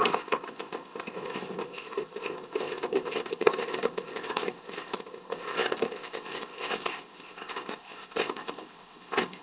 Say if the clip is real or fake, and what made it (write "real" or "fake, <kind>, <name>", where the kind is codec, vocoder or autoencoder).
fake, codec, ZipCodec